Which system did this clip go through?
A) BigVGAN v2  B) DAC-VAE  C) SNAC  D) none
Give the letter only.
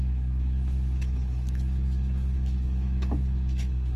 B